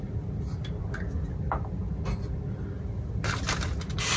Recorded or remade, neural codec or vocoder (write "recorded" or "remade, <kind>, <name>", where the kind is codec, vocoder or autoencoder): recorded